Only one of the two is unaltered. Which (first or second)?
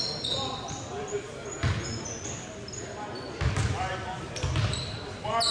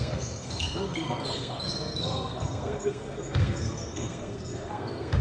first